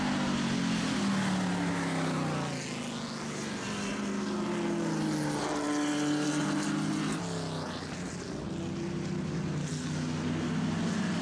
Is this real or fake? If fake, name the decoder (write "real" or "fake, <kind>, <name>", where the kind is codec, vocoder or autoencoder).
real